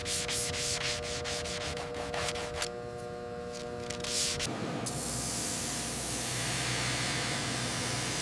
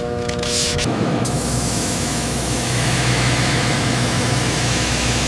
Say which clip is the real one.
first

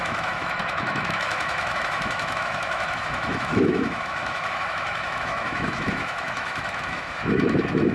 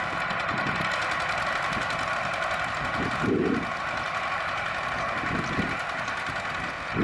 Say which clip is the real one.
second